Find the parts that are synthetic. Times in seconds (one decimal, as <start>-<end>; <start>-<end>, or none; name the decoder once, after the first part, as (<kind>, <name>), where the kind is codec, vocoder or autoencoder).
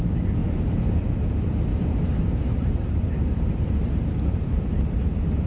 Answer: 0.4-1.0 (vocoder, BigVGAN v2); 1.7-5.0